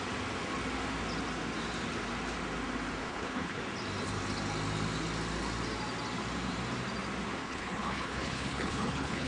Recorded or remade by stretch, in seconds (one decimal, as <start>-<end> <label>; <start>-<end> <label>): 0.0-3.0 recorded; 3.0-3.6 remade; 3.6-7.4 recorded; 7.4-9.3 remade